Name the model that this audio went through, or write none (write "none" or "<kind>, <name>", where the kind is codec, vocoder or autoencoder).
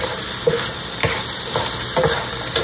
none